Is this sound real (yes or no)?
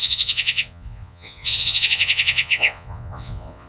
no